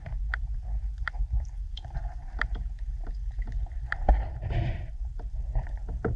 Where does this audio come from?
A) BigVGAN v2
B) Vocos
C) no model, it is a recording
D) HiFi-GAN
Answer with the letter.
A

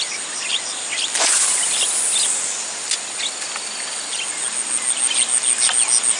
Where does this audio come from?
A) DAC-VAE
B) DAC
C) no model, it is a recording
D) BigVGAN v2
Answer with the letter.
C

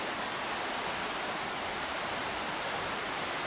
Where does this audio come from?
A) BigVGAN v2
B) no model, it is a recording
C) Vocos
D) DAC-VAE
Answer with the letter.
B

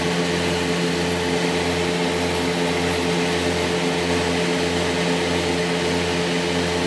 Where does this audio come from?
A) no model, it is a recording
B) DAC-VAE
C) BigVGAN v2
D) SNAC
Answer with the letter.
A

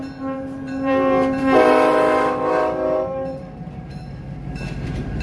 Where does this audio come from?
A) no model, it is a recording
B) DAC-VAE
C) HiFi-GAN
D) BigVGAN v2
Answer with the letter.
D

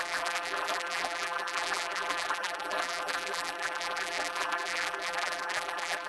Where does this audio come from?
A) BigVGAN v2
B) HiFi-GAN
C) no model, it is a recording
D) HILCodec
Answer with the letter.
A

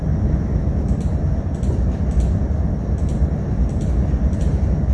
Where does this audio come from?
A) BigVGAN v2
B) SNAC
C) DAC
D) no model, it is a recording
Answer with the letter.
A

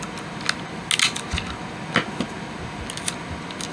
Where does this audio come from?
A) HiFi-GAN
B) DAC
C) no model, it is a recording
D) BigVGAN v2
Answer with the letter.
C